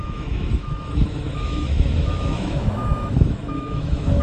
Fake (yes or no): yes